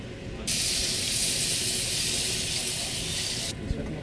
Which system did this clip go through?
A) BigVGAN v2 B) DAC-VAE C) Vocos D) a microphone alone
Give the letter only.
D